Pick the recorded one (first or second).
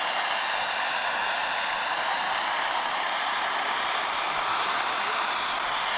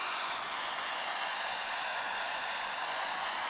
first